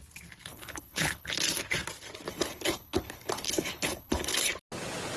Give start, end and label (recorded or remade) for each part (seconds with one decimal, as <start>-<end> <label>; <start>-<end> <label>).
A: 0.0-0.5 recorded; 0.5-1.3 remade; 1.3-2.3 recorded; 2.3-4.5 remade; 4.5-5.2 recorded